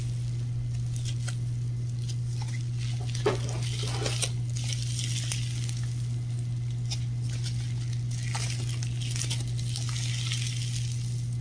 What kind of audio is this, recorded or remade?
recorded